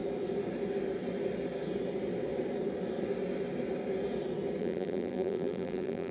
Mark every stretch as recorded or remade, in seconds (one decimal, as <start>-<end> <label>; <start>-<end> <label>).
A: 0.0-4.6 recorded; 4.6-6.1 remade